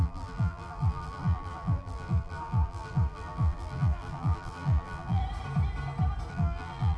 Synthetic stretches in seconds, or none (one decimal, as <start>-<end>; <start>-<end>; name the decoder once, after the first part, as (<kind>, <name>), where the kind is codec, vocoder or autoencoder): 0.0-5.2 (vocoder, BigVGAN v2); 6.3-7.0